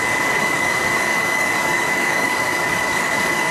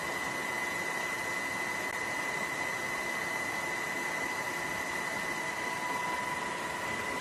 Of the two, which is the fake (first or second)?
first